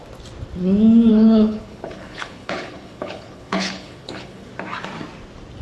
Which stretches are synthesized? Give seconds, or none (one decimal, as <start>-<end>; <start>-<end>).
1.1-4.5